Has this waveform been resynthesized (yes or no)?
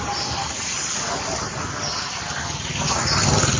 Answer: no